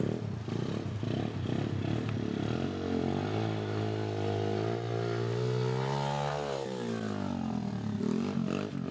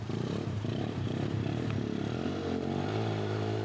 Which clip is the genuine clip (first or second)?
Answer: first